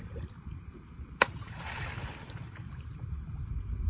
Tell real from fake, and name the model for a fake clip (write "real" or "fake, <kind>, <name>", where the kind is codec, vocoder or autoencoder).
fake, vocoder, BigVGAN v2